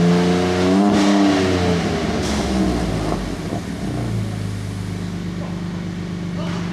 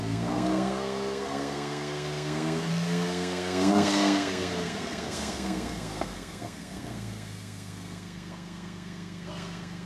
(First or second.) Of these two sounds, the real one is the first